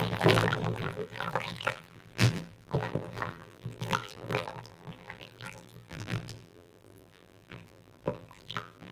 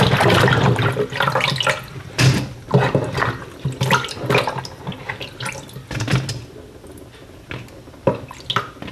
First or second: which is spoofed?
first